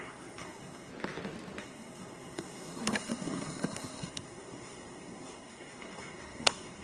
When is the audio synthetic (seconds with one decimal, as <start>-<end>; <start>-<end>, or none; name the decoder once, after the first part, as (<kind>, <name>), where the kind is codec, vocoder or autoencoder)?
0.0-0.9 (codec, SNAC); 1.6-6.8

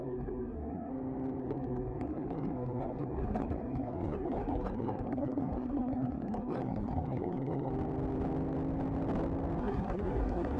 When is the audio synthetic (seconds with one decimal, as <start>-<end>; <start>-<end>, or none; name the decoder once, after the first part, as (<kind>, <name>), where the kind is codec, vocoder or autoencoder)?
0.0-0.9 (codec, SNAC); 1.4-7.7; 9.6-10.6

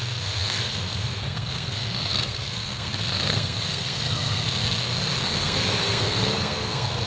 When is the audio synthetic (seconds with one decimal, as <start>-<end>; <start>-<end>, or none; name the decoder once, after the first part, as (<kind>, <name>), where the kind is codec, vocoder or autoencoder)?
0.0-7.1 (codec, SNAC)

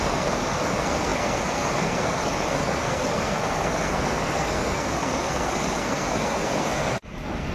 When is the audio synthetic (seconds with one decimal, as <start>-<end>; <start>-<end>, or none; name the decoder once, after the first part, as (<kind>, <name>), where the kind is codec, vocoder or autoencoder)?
0.0-7.5 (codec, SNAC)

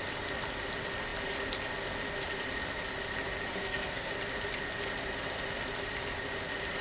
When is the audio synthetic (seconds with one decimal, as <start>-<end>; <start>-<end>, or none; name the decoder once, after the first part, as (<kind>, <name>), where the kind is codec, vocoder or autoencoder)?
3.5-4.1 (codec, SNAC)

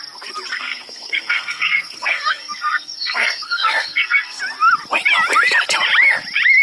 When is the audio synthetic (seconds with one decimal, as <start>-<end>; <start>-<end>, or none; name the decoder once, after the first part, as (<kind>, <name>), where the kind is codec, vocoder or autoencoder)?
0.5-4.4 (codec, SNAC)